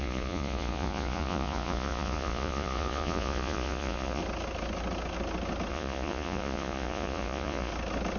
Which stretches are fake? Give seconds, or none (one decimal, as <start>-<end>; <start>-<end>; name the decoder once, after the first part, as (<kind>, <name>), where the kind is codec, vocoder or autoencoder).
0.0-4.2 (vocoder, Vocos); 5.7-7.7